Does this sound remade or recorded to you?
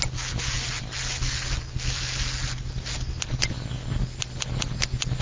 recorded